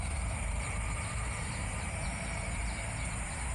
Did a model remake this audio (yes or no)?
yes